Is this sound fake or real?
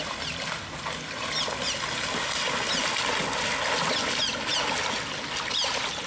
real